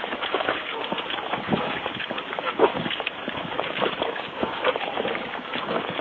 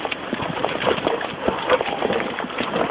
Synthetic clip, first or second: first